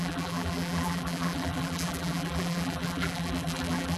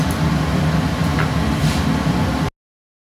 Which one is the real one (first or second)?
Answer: second